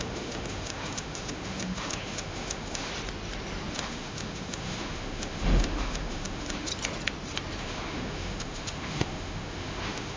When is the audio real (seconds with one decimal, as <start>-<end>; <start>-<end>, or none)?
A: 2.9-3.7; 6.7-7.6